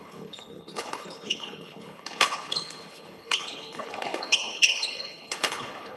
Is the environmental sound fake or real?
fake